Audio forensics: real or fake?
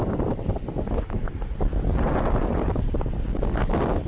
real